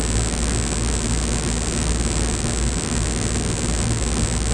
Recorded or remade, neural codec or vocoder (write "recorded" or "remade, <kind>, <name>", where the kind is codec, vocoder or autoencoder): recorded